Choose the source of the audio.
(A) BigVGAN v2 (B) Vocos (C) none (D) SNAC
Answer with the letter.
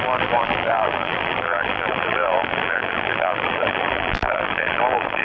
A